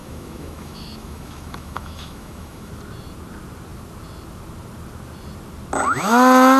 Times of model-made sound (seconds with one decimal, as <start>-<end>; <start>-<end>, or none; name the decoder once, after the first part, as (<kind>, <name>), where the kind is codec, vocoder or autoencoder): 0.0-2.7 (autoencoder, DAC-VAE)